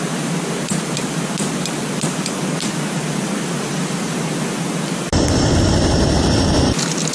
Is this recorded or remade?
recorded